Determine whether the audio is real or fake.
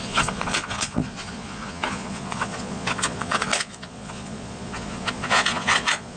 fake